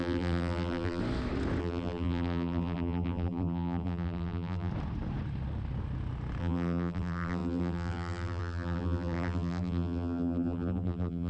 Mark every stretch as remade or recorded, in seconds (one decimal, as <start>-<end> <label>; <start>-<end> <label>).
0.0-1.0 remade; 1.0-1.6 recorded; 1.6-4.7 remade; 4.7-6.4 recorded; 6.4-11.3 remade